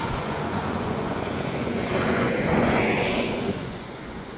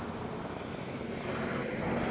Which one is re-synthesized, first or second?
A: first